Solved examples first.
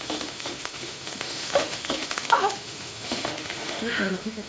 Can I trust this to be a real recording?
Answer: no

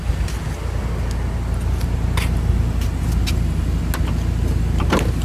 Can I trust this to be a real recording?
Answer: yes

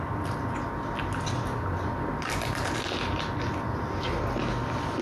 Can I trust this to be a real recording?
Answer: yes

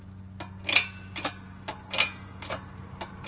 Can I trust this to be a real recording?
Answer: yes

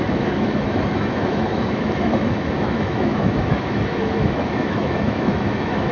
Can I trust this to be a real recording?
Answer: no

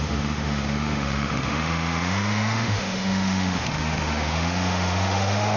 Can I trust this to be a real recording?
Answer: no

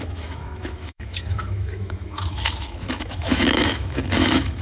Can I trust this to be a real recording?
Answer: no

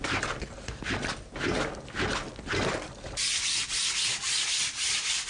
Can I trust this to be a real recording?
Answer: yes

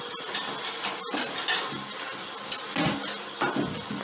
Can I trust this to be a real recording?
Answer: yes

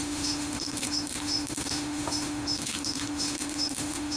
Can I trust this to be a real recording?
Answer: no